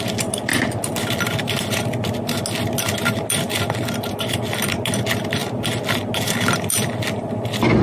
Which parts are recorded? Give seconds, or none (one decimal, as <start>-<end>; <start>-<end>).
0.0-7.8